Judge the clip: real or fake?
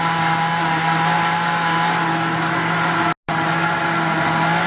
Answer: real